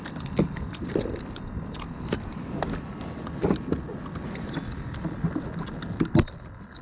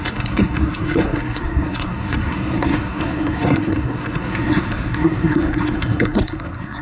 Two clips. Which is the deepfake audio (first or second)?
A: second